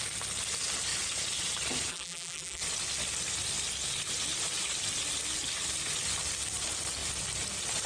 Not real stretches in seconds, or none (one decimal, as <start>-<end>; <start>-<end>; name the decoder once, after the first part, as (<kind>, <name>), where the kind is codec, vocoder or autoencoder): 1.9-2.6 (vocoder, BigVGAN v2)